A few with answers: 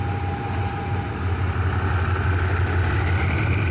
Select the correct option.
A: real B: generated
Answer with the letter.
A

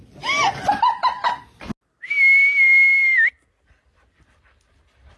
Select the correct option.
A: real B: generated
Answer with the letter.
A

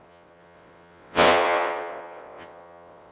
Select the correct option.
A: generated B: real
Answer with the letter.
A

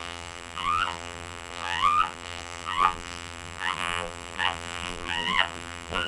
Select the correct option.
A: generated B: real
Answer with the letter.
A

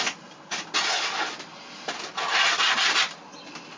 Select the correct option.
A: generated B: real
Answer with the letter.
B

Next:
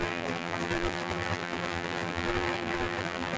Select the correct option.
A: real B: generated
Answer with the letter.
B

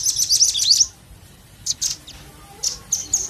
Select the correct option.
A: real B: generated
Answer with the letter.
A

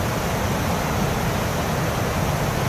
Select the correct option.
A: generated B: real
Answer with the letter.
B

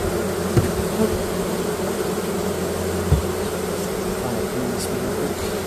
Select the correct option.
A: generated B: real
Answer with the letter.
B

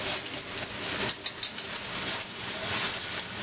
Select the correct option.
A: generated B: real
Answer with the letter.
B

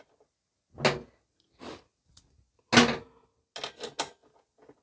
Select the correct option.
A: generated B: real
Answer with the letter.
B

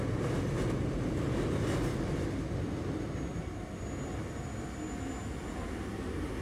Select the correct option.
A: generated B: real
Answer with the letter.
B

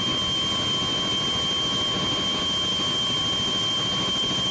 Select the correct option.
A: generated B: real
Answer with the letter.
B